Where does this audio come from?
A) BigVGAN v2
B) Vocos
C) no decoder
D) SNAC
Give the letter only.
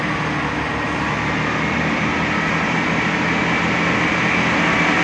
C